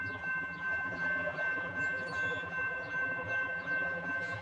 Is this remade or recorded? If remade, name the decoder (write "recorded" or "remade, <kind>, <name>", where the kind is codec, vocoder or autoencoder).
remade, vocoder, BigVGAN v2